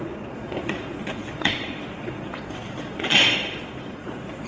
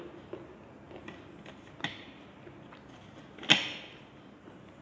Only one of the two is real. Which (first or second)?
second